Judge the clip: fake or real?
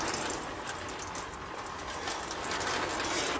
real